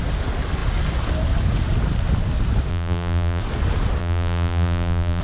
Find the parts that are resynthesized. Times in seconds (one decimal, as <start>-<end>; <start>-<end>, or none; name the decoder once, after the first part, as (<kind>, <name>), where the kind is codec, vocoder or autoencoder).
2.7-3.4 (vocoder, BigVGAN v2); 4.0-5.2